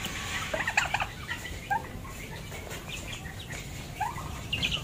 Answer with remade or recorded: recorded